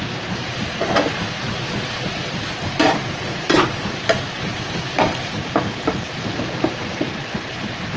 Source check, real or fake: fake